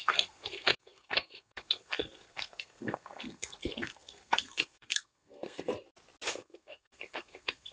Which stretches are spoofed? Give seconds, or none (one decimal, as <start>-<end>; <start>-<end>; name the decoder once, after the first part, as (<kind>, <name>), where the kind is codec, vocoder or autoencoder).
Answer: 0.0-5.7 (codec, SNAC); 6.3-7.7